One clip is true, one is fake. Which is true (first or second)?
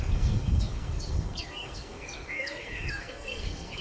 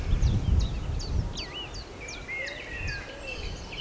second